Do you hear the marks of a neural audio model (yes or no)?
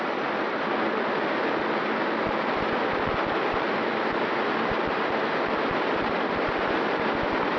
no